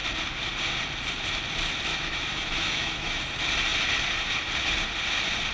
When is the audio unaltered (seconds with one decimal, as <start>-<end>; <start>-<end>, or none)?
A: 0.0-1.9; 3.2-5.5